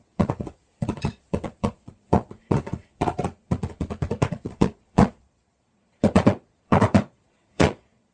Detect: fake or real fake